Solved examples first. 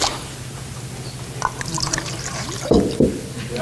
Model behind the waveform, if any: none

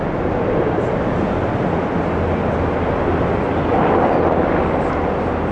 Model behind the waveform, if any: none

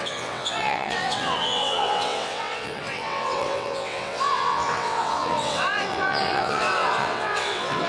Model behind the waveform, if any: vocoder, WaveNeXt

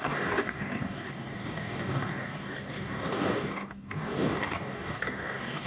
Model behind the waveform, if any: codec, DAC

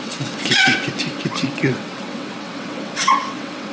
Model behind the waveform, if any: vocoder, WaveNeXt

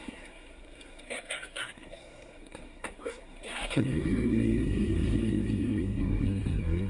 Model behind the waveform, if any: codec, SNAC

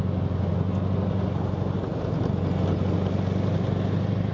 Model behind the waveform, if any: none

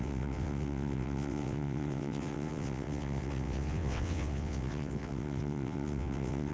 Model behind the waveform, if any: vocoder, WaveNeXt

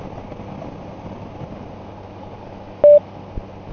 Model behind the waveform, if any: none